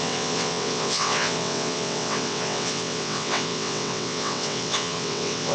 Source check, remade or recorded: remade